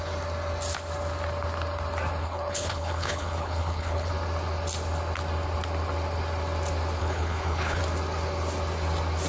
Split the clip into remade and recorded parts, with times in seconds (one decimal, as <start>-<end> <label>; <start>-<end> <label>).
0.0-2.2 recorded; 2.2-4.1 remade; 4.1-7.0 recorded; 7.0-7.8 remade; 7.8-9.3 recorded